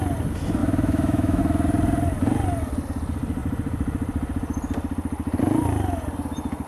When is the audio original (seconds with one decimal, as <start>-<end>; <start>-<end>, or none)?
0.0-0.6; 1.4-6.7